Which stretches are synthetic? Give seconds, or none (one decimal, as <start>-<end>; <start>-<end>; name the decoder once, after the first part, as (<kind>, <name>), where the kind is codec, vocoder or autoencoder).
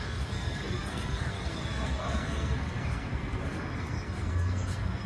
0.0-5.1 (codec, SNAC)